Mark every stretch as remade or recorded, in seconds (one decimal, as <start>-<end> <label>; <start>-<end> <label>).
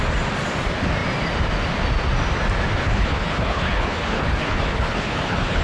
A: 0.0-2.8 recorded; 2.8-5.6 remade